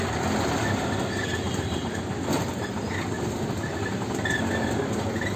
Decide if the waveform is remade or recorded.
recorded